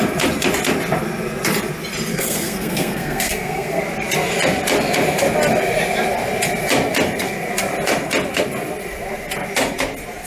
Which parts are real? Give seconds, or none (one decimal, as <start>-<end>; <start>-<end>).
0.0-2.1; 3.8-10.3